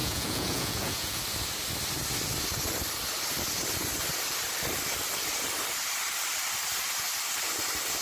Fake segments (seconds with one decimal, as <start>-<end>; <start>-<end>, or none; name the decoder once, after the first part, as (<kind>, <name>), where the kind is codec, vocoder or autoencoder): 0.0-1.2 (vocoder, Vocos)